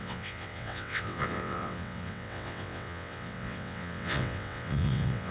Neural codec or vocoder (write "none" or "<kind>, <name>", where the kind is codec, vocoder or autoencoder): vocoder, WaveNeXt